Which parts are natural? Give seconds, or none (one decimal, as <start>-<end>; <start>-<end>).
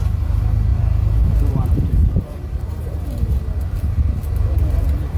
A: 0.0-0.7; 3.4-5.2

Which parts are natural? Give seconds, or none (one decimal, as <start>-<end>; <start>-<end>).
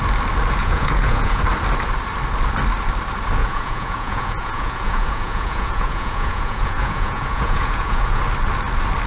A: 0.0-0.6; 1.4-3.4; 8.2-9.1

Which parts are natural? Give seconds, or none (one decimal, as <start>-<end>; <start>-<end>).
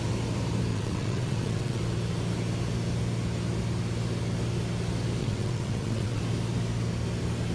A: 0.0-0.7; 1.8-5.2; 6.2-7.5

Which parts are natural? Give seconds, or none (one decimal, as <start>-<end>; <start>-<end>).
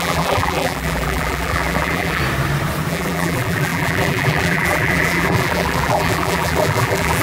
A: 2.2-2.9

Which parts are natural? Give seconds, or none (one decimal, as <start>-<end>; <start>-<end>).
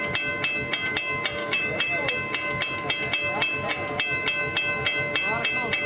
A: 0.0-1.4; 2.1-5.9